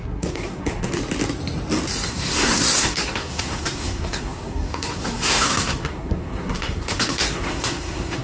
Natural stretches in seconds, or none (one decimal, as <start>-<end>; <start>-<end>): 1.0-2.1